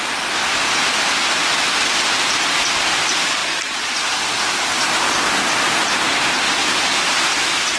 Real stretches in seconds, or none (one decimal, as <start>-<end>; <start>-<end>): 0.0-7.8